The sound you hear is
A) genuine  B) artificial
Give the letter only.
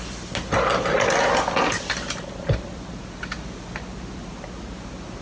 A